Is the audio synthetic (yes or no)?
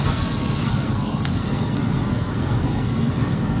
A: yes